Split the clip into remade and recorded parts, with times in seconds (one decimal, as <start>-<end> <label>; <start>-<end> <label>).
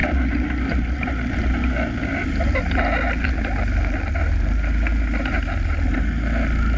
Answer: 0.0-6.8 recorded